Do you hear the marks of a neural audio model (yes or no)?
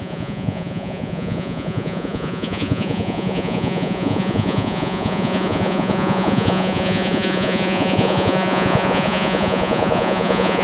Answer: yes